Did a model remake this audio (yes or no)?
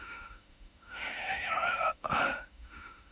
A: yes